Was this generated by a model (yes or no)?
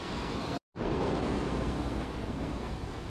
yes